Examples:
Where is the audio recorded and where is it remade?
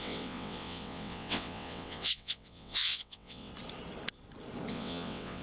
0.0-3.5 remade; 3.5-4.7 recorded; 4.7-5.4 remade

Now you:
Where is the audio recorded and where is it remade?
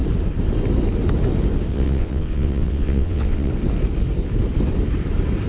0.0-1.7 recorded; 1.7-3.5 remade; 3.5-5.5 recorded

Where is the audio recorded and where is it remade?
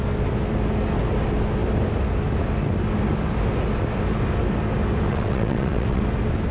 0.0-5.1 recorded; 5.1-6.0 remade; 6.0-6.5 recorded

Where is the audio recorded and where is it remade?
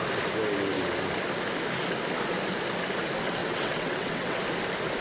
0.0-3.4 recorded; 3.4-4.4 remade; 4.4-5.0 recorded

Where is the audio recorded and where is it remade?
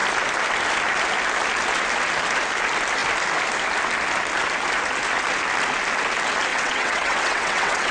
0.0-6.5 recorded; 6.5-7.9 remade